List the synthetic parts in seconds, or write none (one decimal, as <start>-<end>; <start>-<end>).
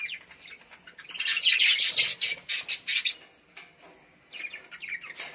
none